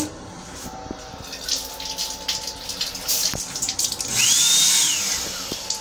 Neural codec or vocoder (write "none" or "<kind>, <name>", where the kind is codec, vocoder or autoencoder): none